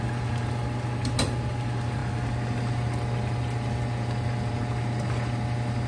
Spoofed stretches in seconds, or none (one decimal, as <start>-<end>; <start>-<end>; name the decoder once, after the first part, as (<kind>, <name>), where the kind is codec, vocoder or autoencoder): none